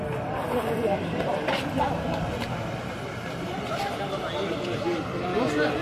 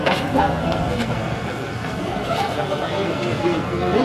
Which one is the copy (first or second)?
second